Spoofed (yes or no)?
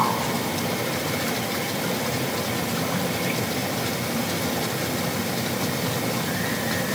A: no